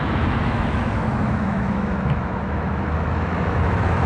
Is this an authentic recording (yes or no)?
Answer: no